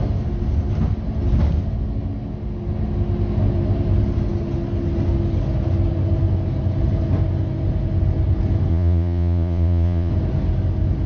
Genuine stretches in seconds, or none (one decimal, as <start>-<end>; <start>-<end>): 0.0-8.7; 10.1-11.1